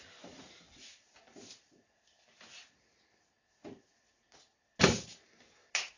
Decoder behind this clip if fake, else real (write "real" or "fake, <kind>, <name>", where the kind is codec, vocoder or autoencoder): real